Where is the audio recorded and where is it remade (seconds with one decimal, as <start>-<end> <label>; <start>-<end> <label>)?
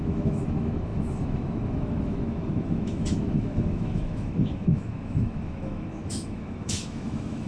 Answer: 0.0-7.5 remade